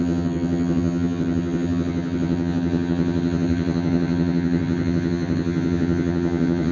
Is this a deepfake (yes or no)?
yes